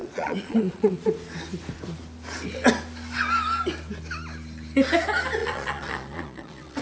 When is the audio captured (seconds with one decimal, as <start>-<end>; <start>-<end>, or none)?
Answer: 0.9-5.4